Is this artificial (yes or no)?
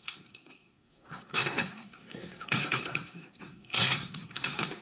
yes